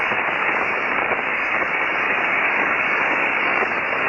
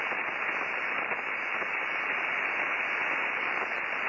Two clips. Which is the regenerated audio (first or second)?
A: first